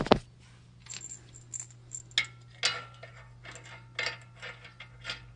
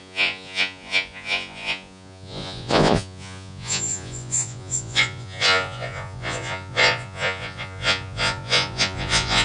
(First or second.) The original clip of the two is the first